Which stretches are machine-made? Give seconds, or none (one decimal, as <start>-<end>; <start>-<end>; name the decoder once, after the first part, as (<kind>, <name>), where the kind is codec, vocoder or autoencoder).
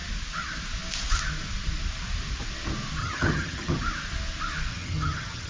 3.0-3.8 (vocoder, HiFi-GAN); 4.7-5.5